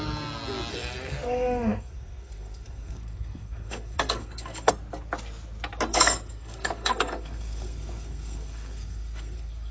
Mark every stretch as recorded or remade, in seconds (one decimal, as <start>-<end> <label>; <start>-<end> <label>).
0.0-0.7 recorded; 0.7-4.7 remade; 4.7-5.9 recorded; 5.9-9.7 remade